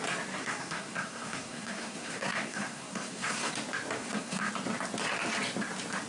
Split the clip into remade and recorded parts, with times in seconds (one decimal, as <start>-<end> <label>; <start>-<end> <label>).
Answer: 0.0-0.4 recorded; 0.4-3.5 remade; 3.5-4.0 recorded; 4.0-4.5 remade; 4.5-6.1 recorded